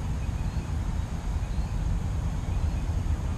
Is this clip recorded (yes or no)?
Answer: no